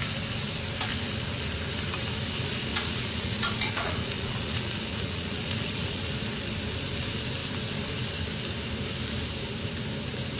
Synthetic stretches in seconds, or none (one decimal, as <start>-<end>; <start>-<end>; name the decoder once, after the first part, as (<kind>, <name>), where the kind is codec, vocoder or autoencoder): 2.7-6.1 (vocoder, Vocos)